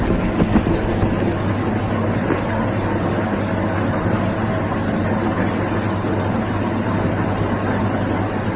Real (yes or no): yes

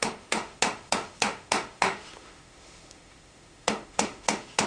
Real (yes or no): no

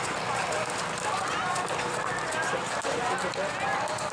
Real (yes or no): yes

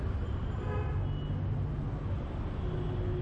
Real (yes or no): yes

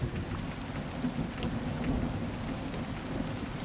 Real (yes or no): yes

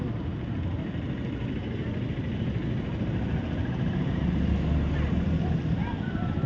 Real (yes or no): yes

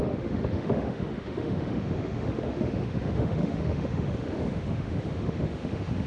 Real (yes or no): no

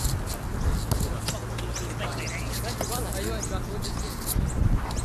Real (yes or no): yes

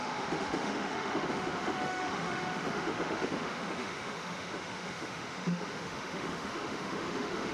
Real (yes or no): no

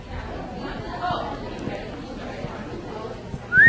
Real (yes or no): yes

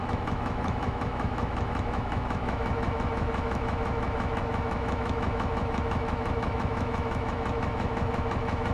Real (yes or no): no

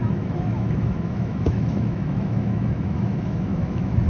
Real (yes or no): no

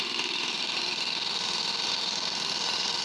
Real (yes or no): no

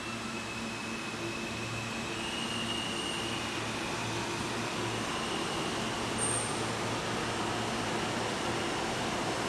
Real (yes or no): yes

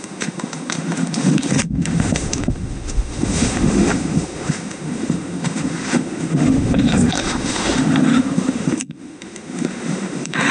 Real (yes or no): no